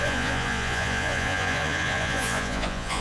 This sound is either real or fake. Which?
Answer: fake